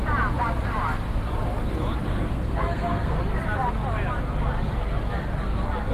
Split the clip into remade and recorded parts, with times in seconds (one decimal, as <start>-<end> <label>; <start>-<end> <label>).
0.0-2.1 recorded; 2.1-3.2 remade; 3.2-5.9 recorded